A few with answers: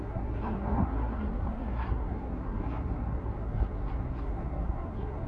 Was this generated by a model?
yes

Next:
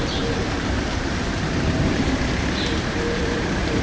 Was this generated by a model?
yes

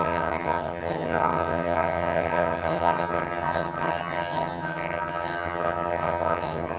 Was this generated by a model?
yes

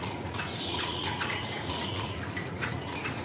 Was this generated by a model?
yes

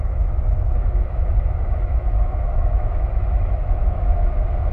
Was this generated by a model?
yes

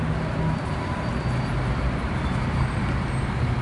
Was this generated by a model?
no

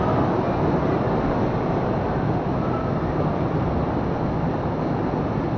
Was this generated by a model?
no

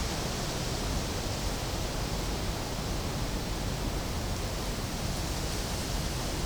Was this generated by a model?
no